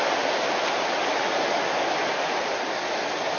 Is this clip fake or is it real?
real